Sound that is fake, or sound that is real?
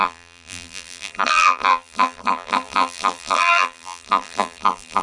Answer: fake